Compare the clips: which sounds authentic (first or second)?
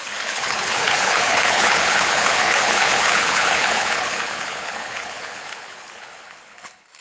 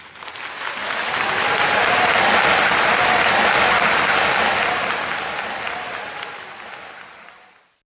second